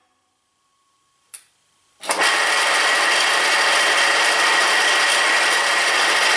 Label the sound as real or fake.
real